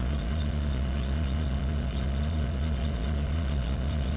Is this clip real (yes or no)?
no